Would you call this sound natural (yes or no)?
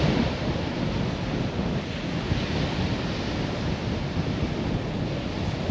yes